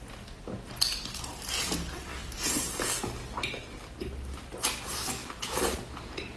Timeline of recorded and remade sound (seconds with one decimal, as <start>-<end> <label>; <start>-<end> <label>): 0.0-2.2 recorded; 2.2-2.8 remade; 2.8-6.4 recorded